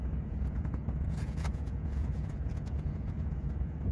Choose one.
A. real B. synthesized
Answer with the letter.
B